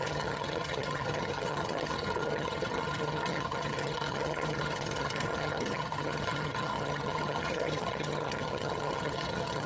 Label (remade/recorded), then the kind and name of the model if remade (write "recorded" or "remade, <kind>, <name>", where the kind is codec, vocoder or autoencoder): remade, vocoder, HiFi-GAN